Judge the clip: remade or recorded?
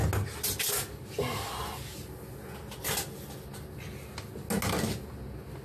recorded